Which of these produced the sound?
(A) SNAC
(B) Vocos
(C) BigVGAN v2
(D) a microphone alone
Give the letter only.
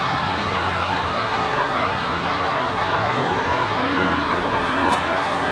A